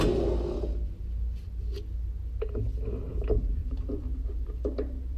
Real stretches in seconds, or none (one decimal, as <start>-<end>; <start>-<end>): 0.0-3.1